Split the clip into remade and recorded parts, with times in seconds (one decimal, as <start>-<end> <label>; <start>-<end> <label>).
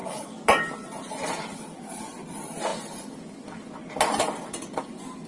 0.0-0.7 remade; 0.7-5.3 recorded